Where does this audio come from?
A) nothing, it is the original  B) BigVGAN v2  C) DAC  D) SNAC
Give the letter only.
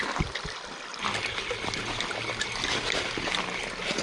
A